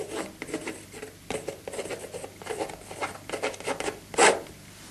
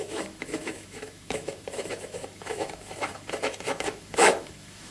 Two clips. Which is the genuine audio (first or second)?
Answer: first